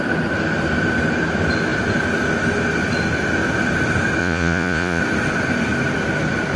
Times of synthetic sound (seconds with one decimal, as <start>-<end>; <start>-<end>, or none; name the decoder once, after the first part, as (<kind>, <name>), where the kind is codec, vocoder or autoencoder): 4.2-5.0 (vocoder, Vocos)